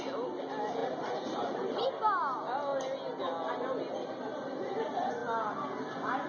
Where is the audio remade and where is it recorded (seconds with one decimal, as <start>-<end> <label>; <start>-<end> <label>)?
0.0-0.8 recorded; 0.8-1.9 remade; 1.9-6.3 recorded

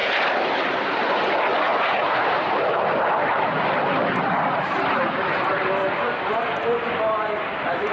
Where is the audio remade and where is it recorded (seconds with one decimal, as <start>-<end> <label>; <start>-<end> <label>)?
0.0-7.9 recorded

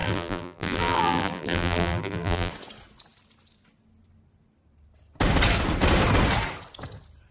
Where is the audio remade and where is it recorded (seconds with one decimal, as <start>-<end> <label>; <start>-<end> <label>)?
0.0-2.5 remade; 2.5-7.3 recorded